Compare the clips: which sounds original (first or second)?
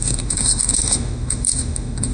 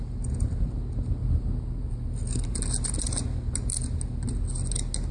second